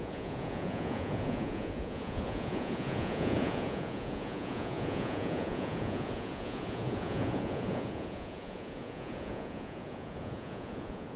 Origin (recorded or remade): remade